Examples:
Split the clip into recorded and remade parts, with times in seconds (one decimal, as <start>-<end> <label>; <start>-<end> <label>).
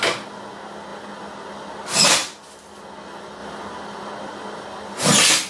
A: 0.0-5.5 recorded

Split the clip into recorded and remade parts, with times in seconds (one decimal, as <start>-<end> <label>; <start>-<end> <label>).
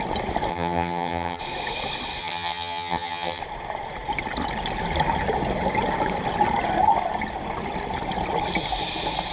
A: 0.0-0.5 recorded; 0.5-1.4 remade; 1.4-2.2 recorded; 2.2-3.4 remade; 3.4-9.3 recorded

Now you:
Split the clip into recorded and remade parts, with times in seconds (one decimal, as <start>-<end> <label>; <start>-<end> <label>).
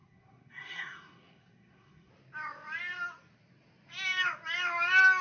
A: 0.0-2.1 remade; 2.1-5.2 recorded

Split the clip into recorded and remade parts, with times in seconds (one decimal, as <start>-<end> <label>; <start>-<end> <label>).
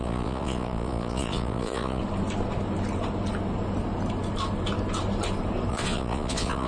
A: 0.0-2.0 remade; 2.0-5.7 recorded; 5.7-6.7 remade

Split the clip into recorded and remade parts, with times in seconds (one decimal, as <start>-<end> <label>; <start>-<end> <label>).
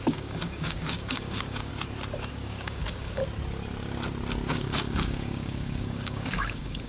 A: 0.0-1.7 remade; 1.7-2.3 recorded; 2.3-3.2 remade; 3.2-4.5 recorded; 4.5-6.9 remade